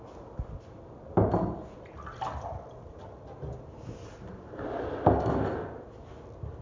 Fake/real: real